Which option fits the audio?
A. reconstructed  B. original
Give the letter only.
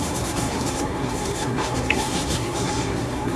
A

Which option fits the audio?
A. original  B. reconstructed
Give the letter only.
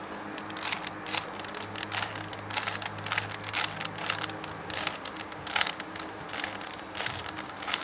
A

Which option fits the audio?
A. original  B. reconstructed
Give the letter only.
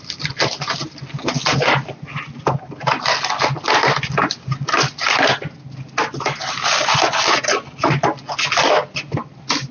A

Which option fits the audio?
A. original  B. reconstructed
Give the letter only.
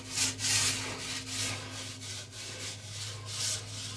A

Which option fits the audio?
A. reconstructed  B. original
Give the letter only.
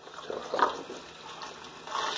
B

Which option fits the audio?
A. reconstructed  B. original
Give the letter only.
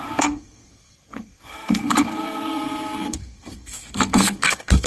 A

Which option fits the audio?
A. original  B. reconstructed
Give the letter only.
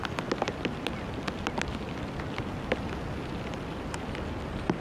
A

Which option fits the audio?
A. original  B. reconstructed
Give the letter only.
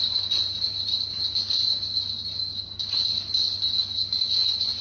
A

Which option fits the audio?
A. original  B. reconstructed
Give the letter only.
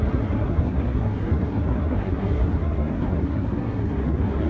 B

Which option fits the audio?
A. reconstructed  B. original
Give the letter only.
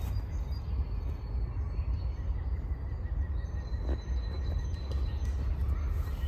B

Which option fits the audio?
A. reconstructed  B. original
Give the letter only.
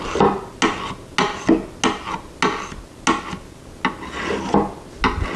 B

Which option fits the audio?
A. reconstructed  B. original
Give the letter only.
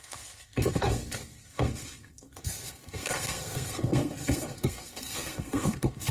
A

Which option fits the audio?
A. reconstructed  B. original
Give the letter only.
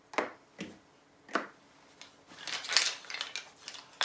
B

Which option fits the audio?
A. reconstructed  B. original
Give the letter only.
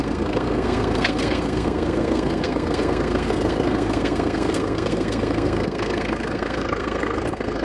A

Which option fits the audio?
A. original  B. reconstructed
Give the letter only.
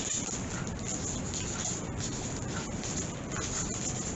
A